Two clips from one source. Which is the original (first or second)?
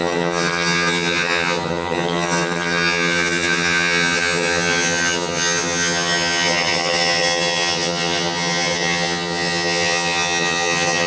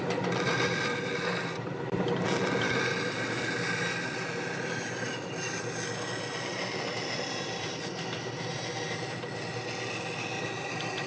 second